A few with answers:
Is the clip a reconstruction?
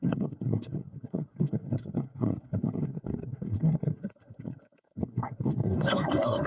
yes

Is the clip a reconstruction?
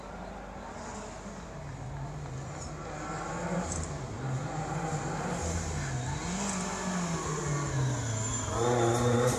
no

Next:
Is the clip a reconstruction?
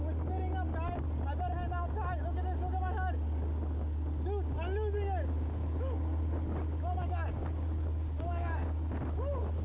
no